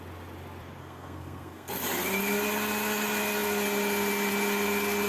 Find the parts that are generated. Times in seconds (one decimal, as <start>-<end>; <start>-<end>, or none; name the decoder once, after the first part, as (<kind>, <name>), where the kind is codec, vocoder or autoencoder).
0.8-1.7 (codec, SNAC)